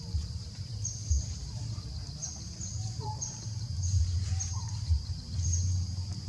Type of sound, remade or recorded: remade